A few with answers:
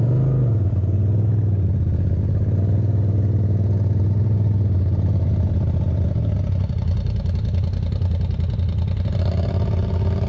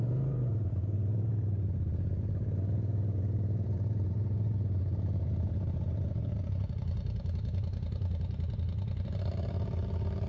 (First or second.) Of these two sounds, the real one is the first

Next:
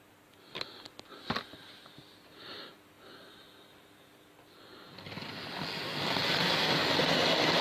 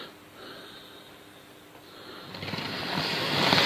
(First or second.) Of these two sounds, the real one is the first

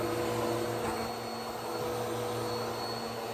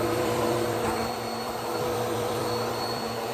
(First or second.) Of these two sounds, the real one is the first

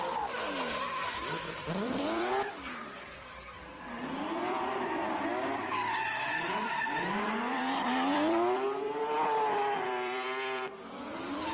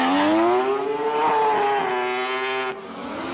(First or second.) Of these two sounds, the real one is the second